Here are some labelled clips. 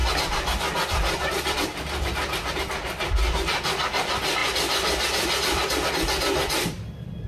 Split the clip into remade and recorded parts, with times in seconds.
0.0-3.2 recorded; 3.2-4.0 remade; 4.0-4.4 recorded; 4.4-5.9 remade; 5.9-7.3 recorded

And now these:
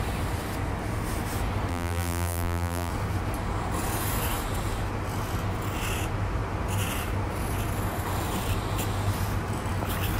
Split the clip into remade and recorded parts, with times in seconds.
0.0-1.7 recorded; 1.7-2.9 remade; 2.9-10.2 recorded

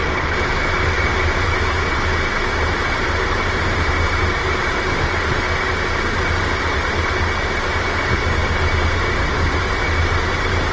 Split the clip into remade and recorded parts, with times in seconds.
0.0-10.7 recorded

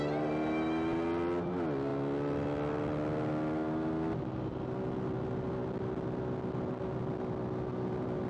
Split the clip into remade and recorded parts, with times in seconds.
0.0-8.3 recorded

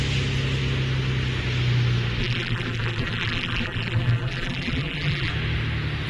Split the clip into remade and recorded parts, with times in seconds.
0.0-2.2 recorded; 2.2-5.3 remade; 5.3-6.1 recorded